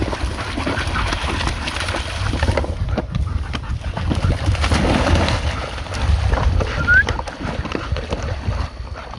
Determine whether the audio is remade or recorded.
recorded